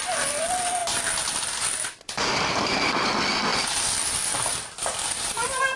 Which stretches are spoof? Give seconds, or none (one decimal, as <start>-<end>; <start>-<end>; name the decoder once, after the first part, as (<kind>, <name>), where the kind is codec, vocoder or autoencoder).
0.0-0.8 (vocoder, BigVGAN v2); 2.3-5.8